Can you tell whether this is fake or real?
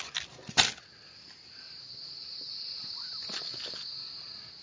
real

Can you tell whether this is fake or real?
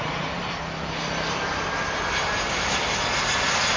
real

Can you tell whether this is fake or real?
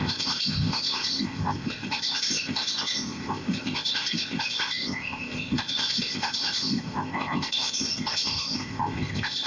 fake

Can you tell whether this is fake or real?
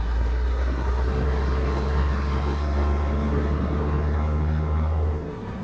fake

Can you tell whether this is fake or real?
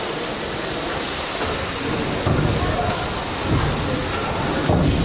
real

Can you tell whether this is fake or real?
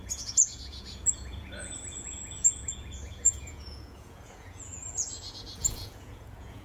fake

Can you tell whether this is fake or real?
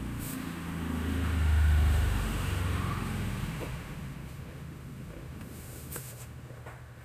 fake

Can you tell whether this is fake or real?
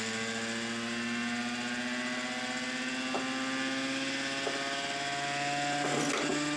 real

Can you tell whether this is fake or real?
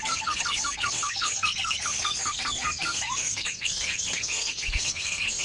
fake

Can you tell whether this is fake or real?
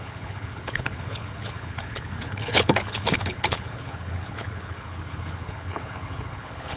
fake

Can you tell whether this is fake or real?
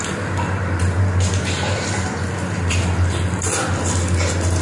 real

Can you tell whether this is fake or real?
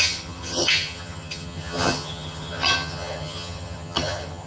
fake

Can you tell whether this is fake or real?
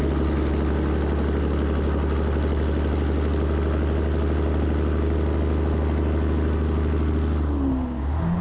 real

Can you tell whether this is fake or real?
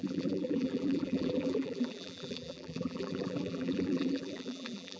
fake